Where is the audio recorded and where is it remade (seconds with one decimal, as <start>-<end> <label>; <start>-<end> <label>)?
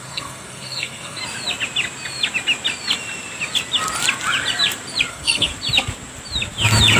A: 0.0-1.2 remade; 1.2-5.1 recorded; 5.1-5.5 remade; 5.5-7.0 recorded